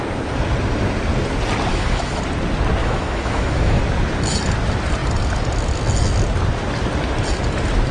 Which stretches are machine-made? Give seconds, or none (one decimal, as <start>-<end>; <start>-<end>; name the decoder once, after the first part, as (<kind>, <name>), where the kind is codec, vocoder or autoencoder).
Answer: 1.7-2.2 (autoencoder, DAC-VAE); 2.8-3.8